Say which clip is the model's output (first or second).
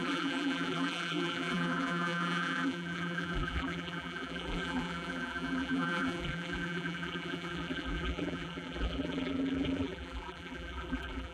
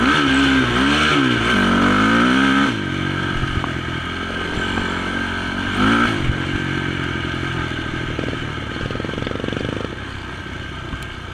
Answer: first